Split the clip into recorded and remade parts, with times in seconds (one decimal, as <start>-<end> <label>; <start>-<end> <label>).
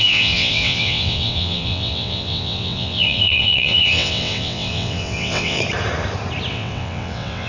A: 0.0-5.6 remade; 5.6-6.5 recorded; 6.5-7.5 remade